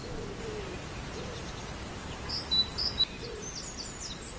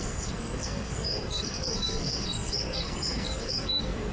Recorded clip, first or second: first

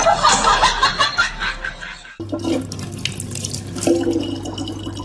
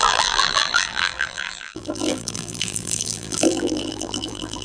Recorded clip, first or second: first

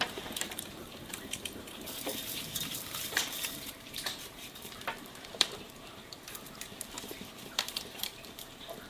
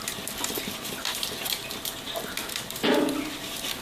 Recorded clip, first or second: second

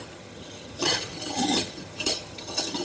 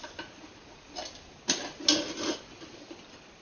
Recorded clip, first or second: second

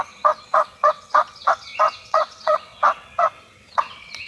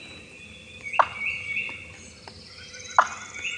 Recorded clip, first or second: second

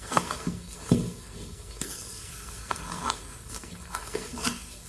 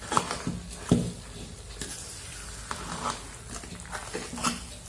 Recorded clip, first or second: second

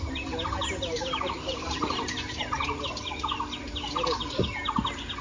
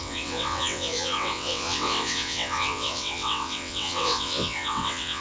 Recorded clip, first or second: first